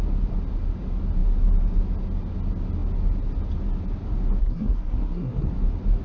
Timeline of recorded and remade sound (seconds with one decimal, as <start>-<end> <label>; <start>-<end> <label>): 0.0-4.4 recorded; 4.4-5.5 remade; 5.5-6.0 recorded